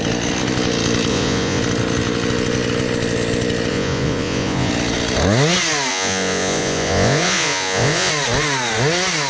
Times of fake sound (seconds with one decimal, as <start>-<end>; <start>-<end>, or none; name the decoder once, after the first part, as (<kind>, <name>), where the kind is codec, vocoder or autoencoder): 1.1-1.6 (vocoder, Vocos); 3.7-4.7; 5.9-8.1